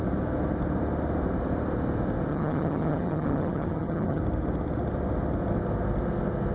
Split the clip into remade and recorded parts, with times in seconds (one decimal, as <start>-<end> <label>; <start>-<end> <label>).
0.0-2.3 recorded; 2.3-4.2 remade; 4.2-6.5 recorded